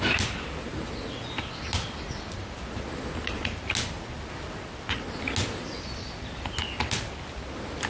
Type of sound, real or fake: real